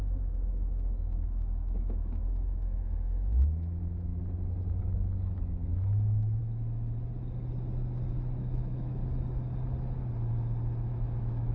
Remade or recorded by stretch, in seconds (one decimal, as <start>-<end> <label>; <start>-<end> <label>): 0.0-4.1 remade; 4.1-4.8 recorded; 4.8-6.4 remade; 6.4-8.1 recorded; 8.1-9.0 remade; 9.0-10.9 recorded; 10.9-11.5 remade